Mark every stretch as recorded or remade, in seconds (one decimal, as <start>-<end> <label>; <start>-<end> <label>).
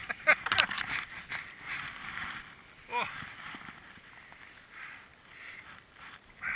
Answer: 0.0-6.6 recorded